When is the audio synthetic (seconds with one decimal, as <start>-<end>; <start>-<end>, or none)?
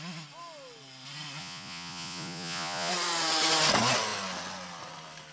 1.4-2.9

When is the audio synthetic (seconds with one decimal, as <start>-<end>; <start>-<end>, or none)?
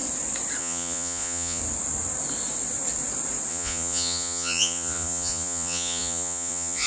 0.6-1.6; 3.5-6.9